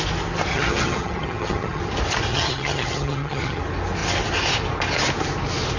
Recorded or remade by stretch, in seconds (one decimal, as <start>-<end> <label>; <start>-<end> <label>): 0.0-0.5 recorded; 0.5-1.8 remade; 1.8-2.3 recorded; 2.3-3.6 remade; 3.6-5.8 recorded